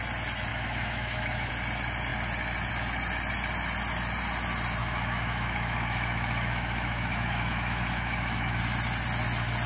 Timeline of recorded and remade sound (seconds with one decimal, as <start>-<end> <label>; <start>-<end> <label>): 0.0-0.5 recorded; 0.5-1.5 remade; 1.5-4.8 recorded; 4.8-8.6 remade; 8.6-9.7 recorded